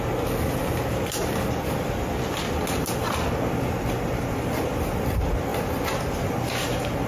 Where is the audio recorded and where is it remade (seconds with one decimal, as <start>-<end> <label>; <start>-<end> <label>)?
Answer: 0.0-5.5 recorded; 5.5-7.1 remade